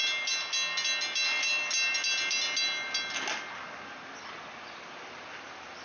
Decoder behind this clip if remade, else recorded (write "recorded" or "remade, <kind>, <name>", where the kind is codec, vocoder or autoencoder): recorded